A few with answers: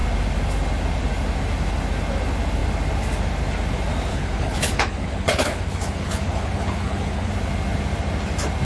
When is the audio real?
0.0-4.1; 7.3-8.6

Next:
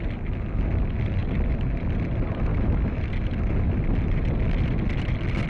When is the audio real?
0.0-2.5; 3.1-5.5

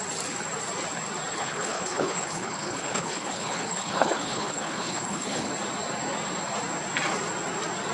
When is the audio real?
0.0-1.3; 5.5-7.9

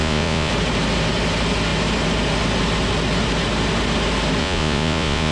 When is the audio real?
0.5-4.4

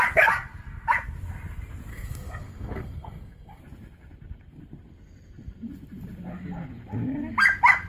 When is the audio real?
0.0-1.9; 3.6-7.9